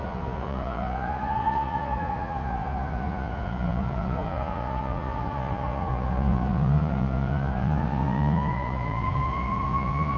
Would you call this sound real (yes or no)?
no